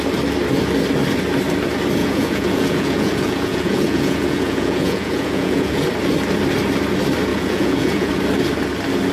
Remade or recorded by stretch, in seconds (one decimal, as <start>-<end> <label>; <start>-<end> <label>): 0.0-2.0 recorded; 2.0-5.9 remade; 5.9-7.3 recorded; 7.3-8.1 remade; 8.1-9.1 recorded